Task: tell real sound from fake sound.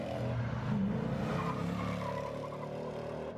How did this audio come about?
real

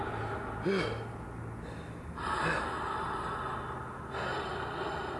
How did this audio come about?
real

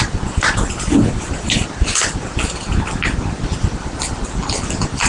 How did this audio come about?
fake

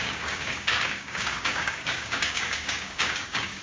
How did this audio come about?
fake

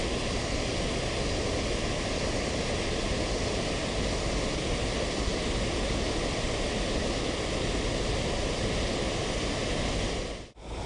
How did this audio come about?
real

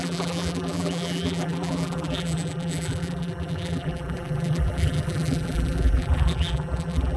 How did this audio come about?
fake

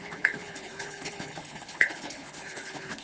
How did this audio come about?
fake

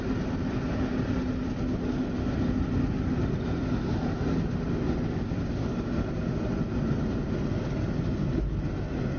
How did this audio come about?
real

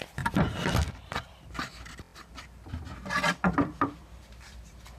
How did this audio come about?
fake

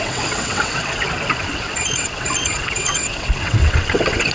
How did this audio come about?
fake